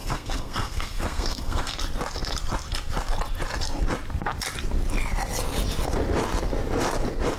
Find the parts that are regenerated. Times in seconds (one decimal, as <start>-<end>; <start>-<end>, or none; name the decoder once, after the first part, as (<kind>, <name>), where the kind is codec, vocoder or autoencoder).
0.0-1.8 (codec, SNAC)